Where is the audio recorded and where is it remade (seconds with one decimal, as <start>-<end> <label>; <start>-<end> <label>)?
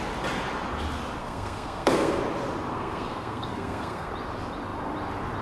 0.0-1.2 recorded; 1.2-2.2 remade; 2.2-2.7 recorded; 2.7-4.1 remade; 4.1-5.4 recorded